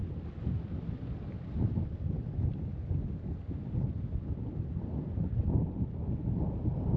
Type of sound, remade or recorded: recorded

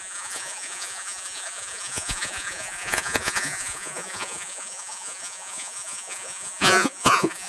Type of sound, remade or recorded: remade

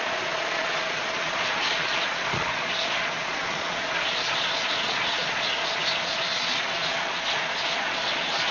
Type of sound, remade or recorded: remade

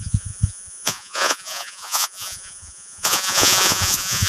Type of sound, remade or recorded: remade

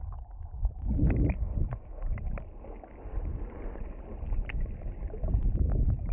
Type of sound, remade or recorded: recorded